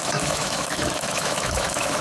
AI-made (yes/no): yes